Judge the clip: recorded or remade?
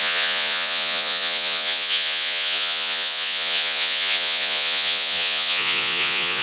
remade